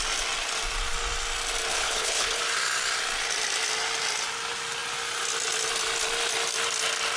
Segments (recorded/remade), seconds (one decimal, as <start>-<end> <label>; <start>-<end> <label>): 0.0-1.7 recorded; 1.7-2.4 remade; 2.4-7.2 recorded